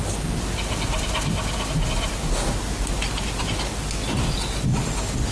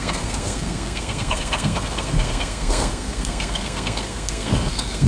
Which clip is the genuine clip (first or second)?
first